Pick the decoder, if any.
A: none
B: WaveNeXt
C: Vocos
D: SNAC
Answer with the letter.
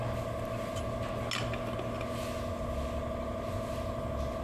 A